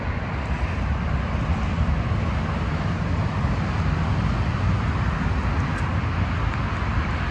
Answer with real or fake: real